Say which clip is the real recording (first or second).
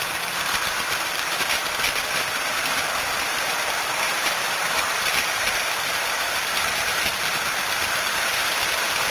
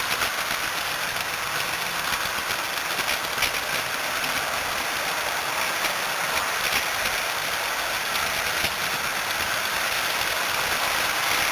second